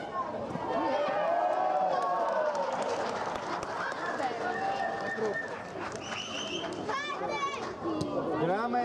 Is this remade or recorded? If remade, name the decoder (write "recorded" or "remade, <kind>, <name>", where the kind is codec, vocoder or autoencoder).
recorded